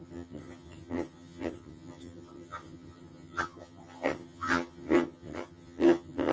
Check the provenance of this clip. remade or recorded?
remade